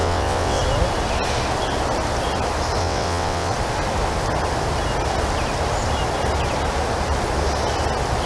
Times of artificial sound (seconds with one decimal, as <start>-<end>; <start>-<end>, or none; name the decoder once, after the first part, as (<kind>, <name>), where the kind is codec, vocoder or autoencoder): 0.0-0.6 (vocoder, WaveNeXt); 2.8-3.5